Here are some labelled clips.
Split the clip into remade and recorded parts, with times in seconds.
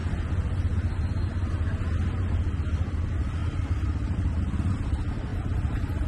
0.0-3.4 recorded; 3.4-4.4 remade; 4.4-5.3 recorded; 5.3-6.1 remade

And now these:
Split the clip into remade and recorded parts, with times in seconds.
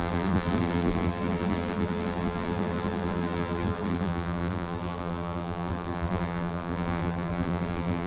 0.0-8.1 remade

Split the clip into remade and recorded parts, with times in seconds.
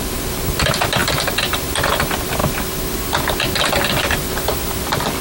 0.0-2.4 remade; 2.4-4.0 recorded; 4.0-5.2 remade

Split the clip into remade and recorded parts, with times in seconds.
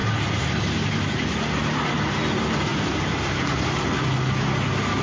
0.0-2.2 remade; 2.2-2.7 recorded; 2.7-3.4 remade; 3.4-5.0 recorded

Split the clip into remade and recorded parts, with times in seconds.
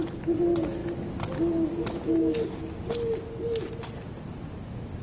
0.0-5.0 recorded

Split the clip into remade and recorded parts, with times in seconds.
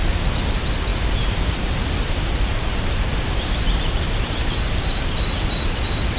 0.0-0.5 recorded; 0.5-6.2 remade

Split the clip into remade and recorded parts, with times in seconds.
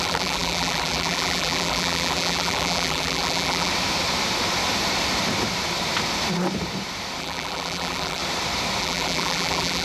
0.0-3.7 remade; 3.7-7.2 recorded; 7.2-8.2 remade; 8.2-8.8 recorded; 8.8-9.8 remade